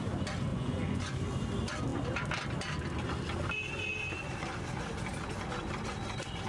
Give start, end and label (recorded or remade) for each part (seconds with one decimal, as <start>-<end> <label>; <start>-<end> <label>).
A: 0.0-0.5 recorded; 0.5-1.0 remade; 1.0-6.5 recorded